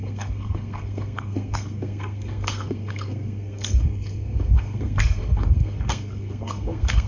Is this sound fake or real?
fake